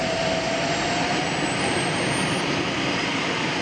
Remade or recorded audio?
recorded